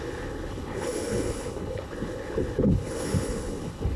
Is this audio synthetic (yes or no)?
yes